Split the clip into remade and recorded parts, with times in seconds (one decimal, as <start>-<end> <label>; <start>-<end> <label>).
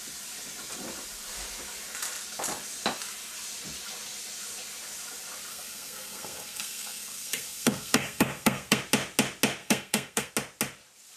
0.0-5.5 recorded; 5.5-8.8 remade; 8.8-9.6 recorded; 9.6-10.3 remade; 10.3-11.2 recorded